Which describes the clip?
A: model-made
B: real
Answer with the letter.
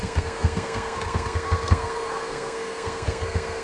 A